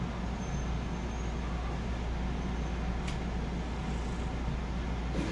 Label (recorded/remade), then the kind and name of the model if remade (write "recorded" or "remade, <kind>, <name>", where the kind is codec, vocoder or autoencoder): recorded